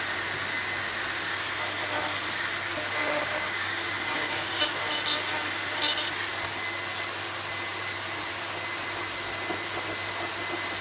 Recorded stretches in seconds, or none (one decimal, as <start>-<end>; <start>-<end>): 0.0-3.0; 4.6-10.8